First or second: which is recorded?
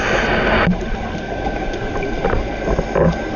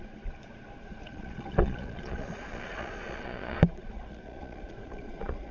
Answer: first